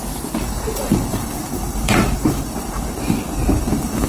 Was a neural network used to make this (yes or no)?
yes